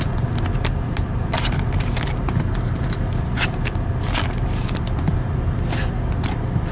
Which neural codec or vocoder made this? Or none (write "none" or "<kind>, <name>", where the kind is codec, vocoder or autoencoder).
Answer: none